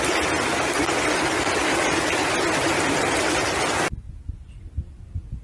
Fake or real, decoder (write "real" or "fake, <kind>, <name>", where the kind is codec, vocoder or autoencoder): real